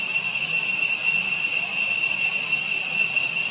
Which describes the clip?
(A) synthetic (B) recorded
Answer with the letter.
B